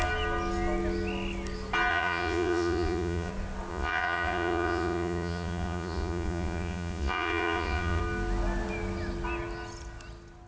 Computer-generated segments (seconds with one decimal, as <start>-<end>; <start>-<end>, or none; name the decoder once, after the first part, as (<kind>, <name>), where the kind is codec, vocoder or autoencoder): 1.9-3.3 (vocoder, Vocos); 3.7-8.0